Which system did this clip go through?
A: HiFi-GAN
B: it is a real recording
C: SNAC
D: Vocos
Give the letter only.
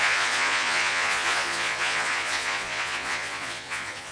D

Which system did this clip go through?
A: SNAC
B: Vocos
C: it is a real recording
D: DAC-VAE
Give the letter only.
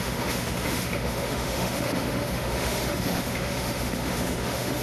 D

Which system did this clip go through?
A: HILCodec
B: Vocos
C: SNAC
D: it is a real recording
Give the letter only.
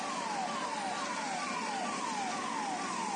D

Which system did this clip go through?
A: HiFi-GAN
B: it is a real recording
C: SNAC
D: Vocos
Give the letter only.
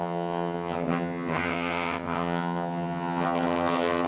A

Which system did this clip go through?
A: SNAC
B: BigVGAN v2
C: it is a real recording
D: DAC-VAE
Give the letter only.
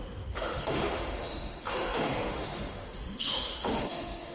D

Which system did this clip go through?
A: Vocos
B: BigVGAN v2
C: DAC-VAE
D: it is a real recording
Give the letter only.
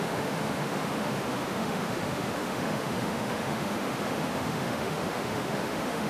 C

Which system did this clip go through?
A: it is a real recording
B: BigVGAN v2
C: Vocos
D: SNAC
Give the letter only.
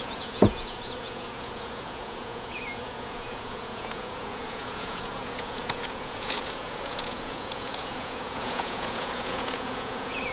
C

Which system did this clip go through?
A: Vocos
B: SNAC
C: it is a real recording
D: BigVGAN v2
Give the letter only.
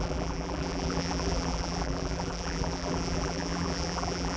D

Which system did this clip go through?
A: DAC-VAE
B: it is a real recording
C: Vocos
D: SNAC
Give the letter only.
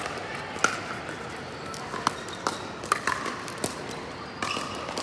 B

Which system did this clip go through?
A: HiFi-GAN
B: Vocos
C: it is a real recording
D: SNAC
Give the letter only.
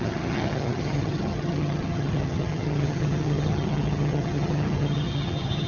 A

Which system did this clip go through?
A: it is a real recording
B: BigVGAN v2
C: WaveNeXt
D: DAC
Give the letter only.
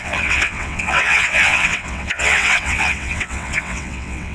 C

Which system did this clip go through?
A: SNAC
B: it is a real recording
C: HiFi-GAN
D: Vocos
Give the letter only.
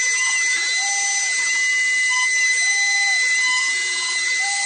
B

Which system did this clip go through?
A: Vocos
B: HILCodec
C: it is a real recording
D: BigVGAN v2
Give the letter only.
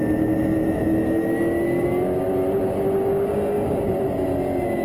C